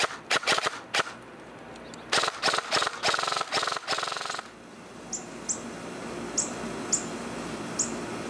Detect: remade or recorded recorded